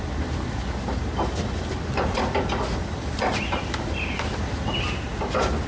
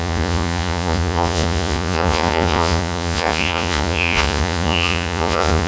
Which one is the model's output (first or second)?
second